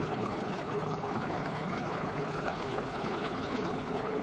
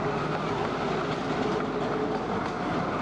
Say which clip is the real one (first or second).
second